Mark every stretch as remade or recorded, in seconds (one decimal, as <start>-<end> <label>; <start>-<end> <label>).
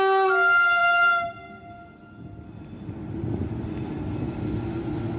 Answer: 0.0-5.2 recorded